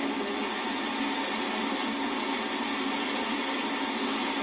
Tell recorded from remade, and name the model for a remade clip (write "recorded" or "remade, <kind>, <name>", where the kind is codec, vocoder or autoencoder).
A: recorded